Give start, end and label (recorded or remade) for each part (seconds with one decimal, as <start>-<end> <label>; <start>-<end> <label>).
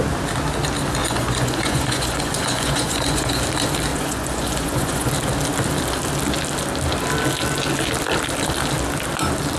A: 0.0-1.0 recorded; 1.0-3.4 remade; 3.4-3.9 recorded; 3.9-5.1 remade; 5.1-9.6 recorded